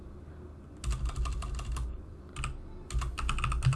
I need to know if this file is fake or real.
real